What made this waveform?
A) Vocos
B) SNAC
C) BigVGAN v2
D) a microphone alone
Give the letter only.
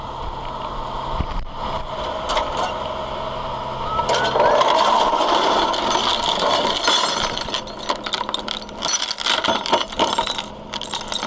D